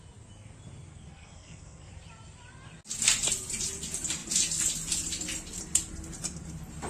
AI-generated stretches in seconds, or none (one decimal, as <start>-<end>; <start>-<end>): 0.9-1.9